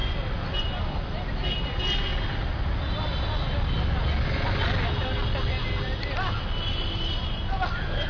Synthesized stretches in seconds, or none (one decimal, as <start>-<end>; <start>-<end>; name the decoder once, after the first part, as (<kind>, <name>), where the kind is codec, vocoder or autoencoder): none